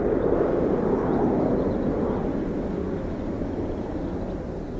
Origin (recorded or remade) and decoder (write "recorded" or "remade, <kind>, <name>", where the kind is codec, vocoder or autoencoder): recorded